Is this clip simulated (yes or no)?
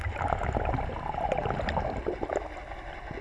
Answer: no